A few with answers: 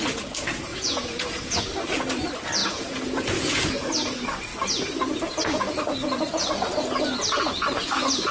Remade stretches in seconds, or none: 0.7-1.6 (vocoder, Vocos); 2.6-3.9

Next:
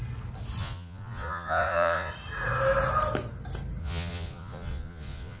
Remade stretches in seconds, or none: 0.6-2.1 (vocoder, Vocos); 3.8-5.4